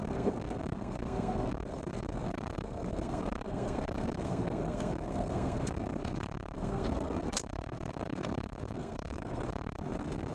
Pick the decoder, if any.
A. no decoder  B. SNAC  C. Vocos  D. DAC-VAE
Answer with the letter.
B